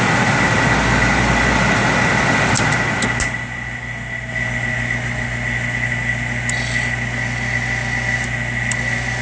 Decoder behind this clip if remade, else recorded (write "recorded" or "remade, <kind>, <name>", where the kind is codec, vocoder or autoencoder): recorded